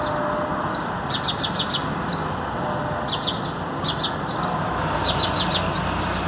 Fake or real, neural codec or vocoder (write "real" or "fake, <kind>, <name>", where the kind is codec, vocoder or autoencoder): real